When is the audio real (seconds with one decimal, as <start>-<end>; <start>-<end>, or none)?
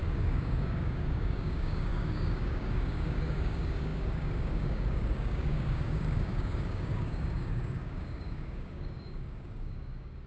none